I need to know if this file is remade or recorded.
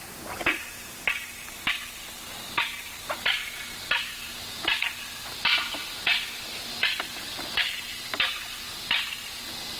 recorded